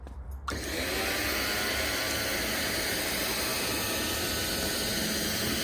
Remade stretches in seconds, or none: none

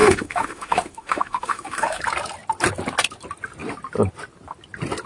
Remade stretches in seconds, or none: 0.0-2.0

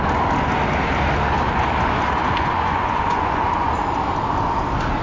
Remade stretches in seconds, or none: 2.2-3.7